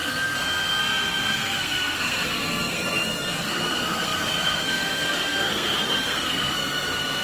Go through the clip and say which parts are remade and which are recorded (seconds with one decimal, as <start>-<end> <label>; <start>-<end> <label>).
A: 0.0-7.2 remade